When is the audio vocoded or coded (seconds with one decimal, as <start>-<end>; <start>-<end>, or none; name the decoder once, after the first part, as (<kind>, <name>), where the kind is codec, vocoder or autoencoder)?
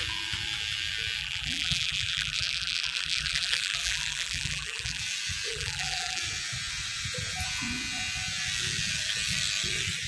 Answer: 1.2-5.0 (vocoder, BigVGAN v2); 5.5-6.2